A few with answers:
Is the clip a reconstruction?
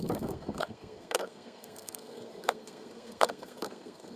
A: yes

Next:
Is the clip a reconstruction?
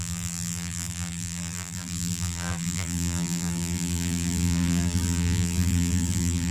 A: yes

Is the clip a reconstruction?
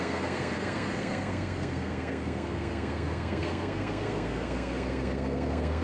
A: yes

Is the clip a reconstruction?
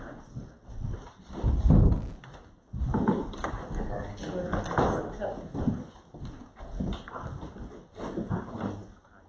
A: no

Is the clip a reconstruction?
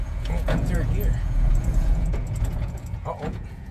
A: yes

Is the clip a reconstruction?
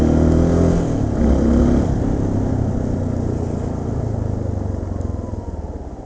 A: no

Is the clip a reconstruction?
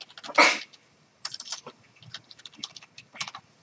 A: no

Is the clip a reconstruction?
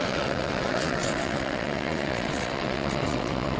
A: yes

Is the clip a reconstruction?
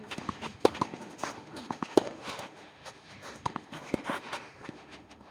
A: yes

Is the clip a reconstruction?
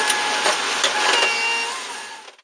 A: no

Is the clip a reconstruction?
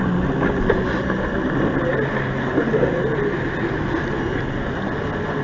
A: no